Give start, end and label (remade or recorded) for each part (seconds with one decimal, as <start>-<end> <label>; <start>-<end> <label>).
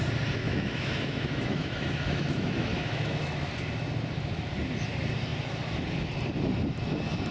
0.0-0.4 recorded; 0.4-3.5 remade; 3.5-7.3 recorded